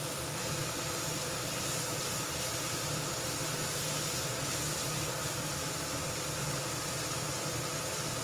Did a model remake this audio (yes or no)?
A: no